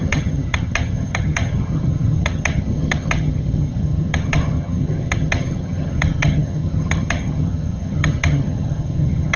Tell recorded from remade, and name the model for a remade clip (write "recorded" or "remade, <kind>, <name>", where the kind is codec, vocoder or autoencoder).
remade, vocoder, HiFi-GAN